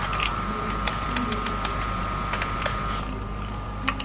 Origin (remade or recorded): recorded